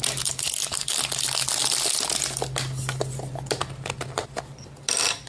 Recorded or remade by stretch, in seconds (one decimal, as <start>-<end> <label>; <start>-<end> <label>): 0.0-5.3 recorded